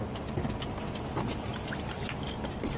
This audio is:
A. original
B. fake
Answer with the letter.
A